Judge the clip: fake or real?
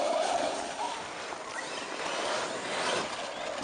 real